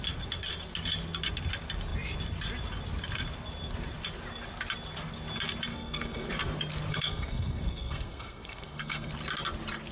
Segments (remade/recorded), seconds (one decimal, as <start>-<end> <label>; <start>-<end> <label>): 0.0-5.7 recorded; 5.7-6.3 remade; 6.3-6.9 recorded; 6.9-9.1 remade; 9.1-9.9 recorded